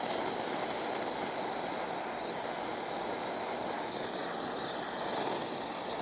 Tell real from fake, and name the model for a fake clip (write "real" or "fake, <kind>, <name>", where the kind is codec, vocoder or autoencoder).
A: real